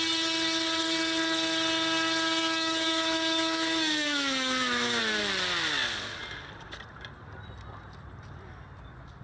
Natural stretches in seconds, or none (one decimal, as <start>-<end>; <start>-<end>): 0.0-2.4; 5.0-9.2